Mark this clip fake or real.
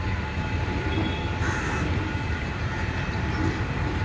fake